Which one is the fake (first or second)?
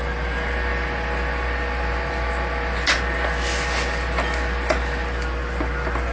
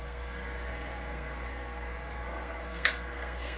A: second